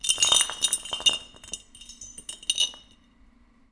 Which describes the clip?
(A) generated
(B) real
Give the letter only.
B